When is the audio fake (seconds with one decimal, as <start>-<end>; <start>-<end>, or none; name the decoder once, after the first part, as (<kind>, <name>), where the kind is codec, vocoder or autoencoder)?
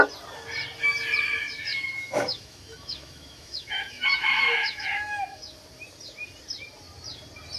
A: 1.7-5.4 (autoencoder, DAC-VAE)